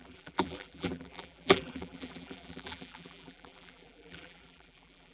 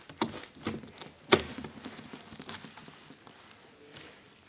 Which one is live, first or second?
second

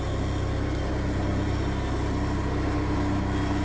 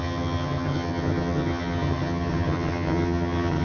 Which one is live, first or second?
first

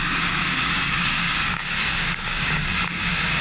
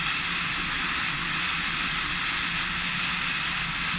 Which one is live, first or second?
second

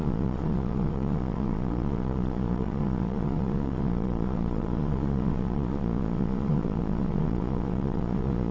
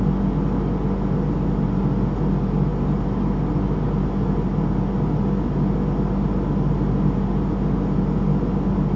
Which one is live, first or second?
second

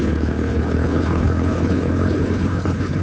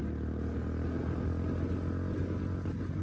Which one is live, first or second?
second